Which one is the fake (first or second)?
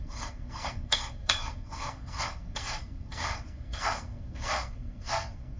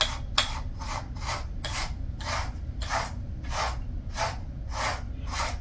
first